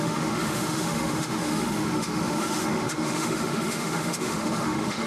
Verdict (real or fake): fake